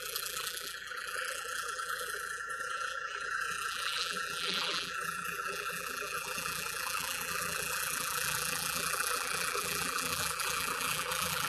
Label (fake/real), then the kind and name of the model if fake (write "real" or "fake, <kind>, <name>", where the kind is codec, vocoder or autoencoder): fake, vocoder, BigVGAN v2